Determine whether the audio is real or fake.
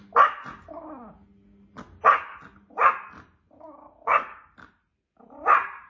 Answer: real